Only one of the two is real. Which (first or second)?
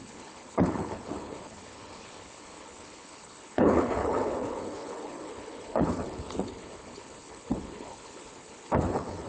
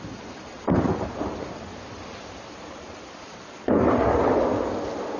second